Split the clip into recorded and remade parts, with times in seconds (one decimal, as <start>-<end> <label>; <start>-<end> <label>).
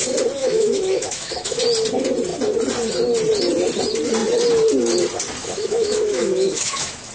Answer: 0.0-0.4 recorded; 0.4-1.6 remade; 1.6-5.4 recorded; 5.4-7.1 remade